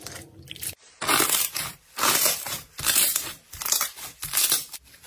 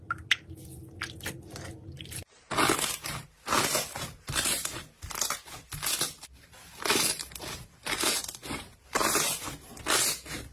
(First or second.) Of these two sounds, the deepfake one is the first